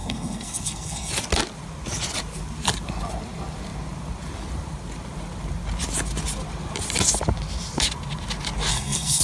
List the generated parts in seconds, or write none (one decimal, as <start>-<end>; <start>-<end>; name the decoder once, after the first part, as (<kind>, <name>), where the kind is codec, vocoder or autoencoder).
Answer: 0.0-1.1 (codec, SNAC); 8.7-9.2